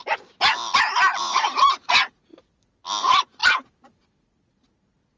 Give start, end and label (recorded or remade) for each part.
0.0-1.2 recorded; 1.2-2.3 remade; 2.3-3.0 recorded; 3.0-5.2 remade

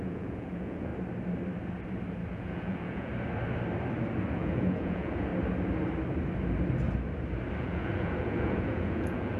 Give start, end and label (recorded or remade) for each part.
0.0-0.9 remade; 0.9-2.3 recorded; 2.3-3.1 remade; 3.1-4.3 recorded; 4.3-5.3 remade; 5.3-7.6 recorded; 7.6-9.4 remade

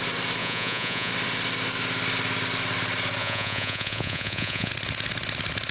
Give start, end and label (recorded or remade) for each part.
0.0-0.4 recorded; 0.4-1.1 remade; 1.1-3.2 recorded; 3.2-4.7 remade; 4.7-5.7 recorded

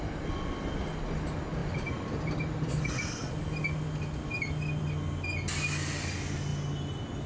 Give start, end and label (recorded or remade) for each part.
0.0-7.3 recorded